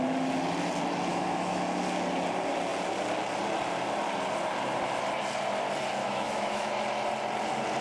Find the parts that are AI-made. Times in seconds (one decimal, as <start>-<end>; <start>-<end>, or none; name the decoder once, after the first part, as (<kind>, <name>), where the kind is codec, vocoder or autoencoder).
1.1-1.6 (autoencoder, DAC-VAE); 6.0-6.7